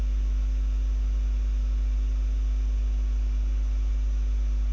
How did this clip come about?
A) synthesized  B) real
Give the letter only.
B